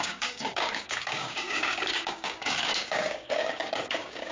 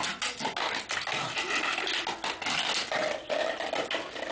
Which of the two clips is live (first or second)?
second